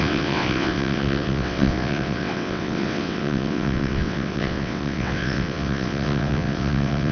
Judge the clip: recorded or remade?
remade